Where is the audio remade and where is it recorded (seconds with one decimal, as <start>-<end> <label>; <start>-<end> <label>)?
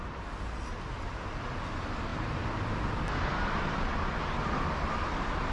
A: 0.0-5.5 recorded